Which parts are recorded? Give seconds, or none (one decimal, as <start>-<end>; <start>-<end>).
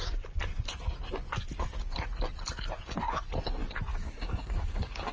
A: 0.0-3.9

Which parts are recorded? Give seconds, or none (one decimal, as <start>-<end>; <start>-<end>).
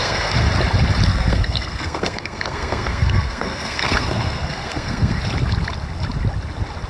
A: 0.5-1.1; 5.2-6.9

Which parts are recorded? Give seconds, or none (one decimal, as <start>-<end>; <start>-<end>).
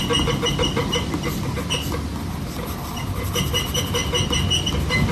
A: 0.0-5.1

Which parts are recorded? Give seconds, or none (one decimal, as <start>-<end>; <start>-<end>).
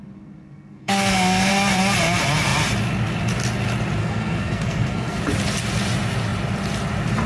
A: 1.5-4.0; 5.2-7.3